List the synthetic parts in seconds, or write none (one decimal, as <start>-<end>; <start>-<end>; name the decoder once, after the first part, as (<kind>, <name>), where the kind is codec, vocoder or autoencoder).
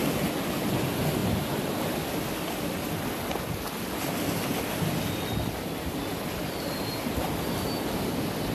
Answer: none